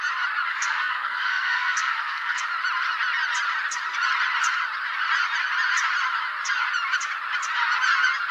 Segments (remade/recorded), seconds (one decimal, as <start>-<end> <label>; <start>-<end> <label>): 0.0-0.5 recorded; 0.5-2.4 remade; 2.4-8.3 recorded